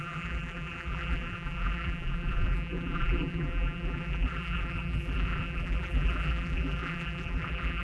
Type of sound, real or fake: fake